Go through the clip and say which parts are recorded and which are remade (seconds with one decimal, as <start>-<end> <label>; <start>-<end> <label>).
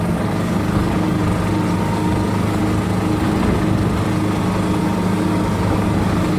0.0-1.2 remade; 1.2-1.8 recorded; 1.8-2.6 remade; 2.6-4.8 recorded; 4.8-6.4 remade